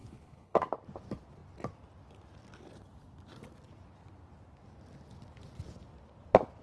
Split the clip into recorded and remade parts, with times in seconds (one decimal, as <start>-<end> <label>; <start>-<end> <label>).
0.0-0.6 remade; 0.6-6.6 recorded